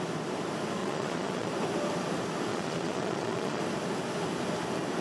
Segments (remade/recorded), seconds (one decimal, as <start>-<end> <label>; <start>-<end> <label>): 0.0-0.8 recorded; 0.8-1.5 remade; 1.5-2.5 recorded; 2.5-3.6 remade; 3.6-5.0 recorded